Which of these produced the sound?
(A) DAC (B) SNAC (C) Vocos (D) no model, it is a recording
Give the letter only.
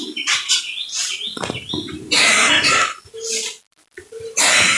D